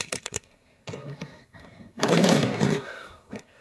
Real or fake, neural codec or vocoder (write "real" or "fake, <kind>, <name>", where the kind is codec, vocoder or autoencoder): fake, codec, SNAC